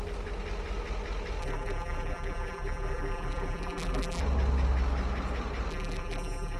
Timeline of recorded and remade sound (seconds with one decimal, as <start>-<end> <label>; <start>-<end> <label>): 0.0-1.4 recorded; 1.4-4.2 remade; 4.2-5.7 recorded; 5.7-6.6 remade